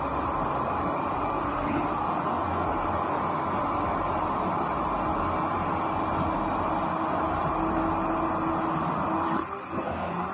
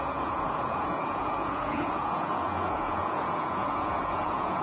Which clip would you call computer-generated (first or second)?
second